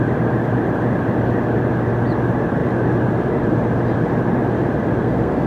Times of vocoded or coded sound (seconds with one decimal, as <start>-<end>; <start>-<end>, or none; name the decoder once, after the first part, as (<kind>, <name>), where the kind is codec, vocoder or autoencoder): 5.0-5.5 (codec, SNAC)